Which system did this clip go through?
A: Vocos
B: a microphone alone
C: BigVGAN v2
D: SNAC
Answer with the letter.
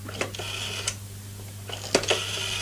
B